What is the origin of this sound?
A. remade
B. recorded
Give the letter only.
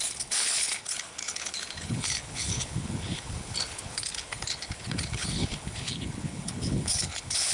A